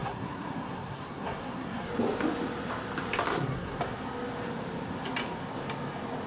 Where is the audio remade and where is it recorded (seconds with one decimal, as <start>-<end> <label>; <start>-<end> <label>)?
0.0-1.9 remade; 1.9-3.3 recorded; 3.3-3.8 remade; 3.8-6.3 recorded